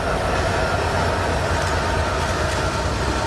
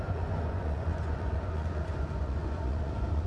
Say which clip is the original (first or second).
first